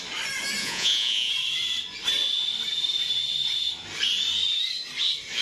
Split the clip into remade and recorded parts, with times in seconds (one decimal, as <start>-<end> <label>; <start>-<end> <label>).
0.0-0.6 recorded; 0.6-1.3 remade; 1.3-5.4 recorded